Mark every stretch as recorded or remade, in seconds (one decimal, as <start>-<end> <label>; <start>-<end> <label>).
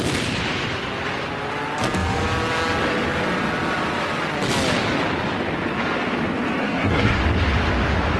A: 0.0-6.6 recorded; 6.6-7.2 remade; 7.2-8.2 recorded